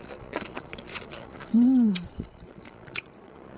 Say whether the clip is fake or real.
fake